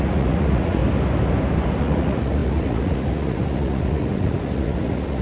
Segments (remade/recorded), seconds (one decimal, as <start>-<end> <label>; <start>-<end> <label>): 0.0-0.8 remade; 0.8-1.8 recorded; 1.8-5.2 remade